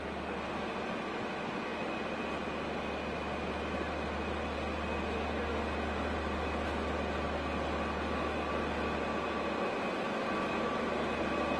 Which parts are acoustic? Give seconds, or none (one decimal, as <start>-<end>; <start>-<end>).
0.0-11.6